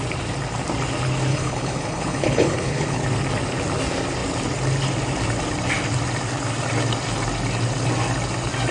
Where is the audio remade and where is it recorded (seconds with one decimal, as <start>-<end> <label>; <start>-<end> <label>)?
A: 0.0-1.3 recorded; 1.3-3.0 remade; 3.0-8.7 recorded